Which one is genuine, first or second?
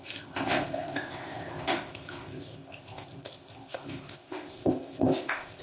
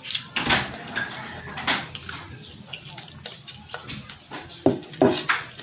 second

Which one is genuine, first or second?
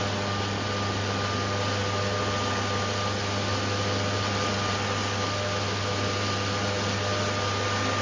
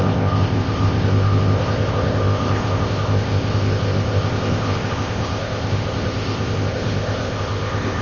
first